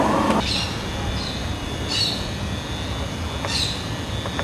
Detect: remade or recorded recorded